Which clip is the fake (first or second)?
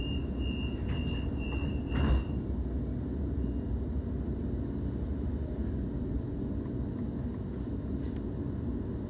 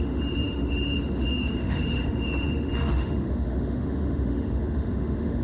second